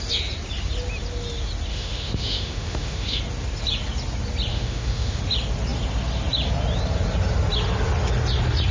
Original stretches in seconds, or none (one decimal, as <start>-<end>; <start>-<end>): 0.0-1.7; 3.2-4.5; 5.2-8.7